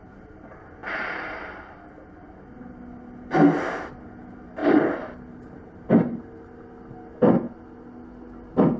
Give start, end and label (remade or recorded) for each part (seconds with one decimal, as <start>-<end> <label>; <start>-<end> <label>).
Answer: 0.0-8.8 recorded